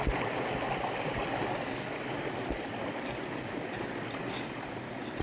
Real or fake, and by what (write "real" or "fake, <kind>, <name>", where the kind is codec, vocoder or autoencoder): real